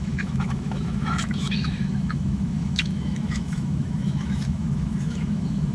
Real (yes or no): no